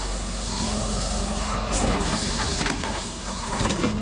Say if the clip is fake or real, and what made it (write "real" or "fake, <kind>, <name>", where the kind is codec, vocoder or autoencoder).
fake, codec, SNAC